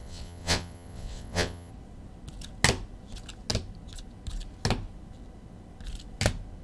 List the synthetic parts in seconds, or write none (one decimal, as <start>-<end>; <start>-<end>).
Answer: 0.0-1.7